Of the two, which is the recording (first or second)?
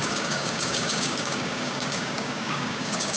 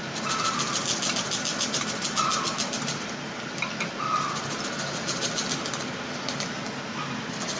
second